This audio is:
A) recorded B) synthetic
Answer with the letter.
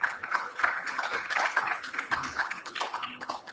B